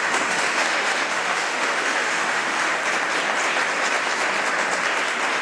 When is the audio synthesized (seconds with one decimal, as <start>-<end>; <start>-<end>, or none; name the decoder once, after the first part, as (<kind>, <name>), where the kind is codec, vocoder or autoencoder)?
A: 0.0-2.8 (autoencoder, DAC-VAE)